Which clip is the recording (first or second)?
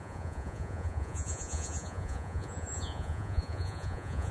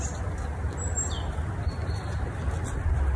second